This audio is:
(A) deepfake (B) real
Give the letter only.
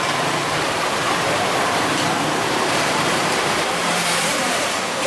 A